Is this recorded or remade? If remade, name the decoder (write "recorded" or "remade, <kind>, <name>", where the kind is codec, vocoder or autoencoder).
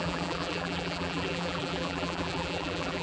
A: remade, vocoder, BigVGAN v2